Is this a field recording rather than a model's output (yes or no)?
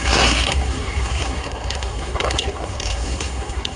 no